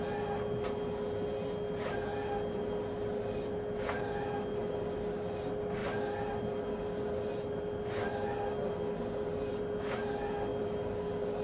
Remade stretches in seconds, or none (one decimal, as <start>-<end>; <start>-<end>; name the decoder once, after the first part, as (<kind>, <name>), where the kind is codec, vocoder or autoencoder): none